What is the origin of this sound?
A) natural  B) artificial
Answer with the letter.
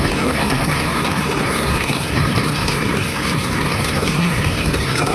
B